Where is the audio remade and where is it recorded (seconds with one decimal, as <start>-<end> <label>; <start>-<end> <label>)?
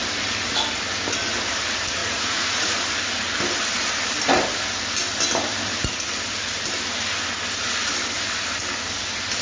0.0-2.0 recorded; 2.0-2.8 remade; 2.8-9.4 recorded